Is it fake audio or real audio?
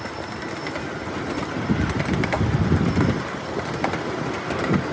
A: real